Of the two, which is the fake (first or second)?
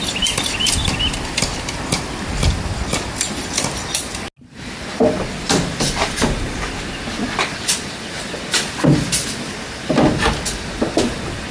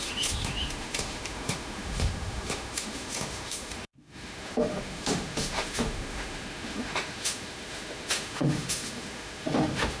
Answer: second